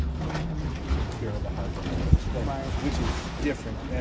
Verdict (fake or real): real